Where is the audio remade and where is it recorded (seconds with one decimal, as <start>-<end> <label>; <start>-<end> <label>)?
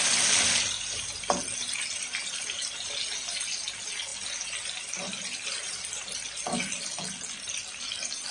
0.0-8.3 recorded